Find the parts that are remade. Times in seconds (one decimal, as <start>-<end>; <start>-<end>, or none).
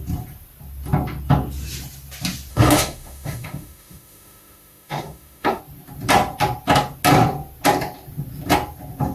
2.5-5.6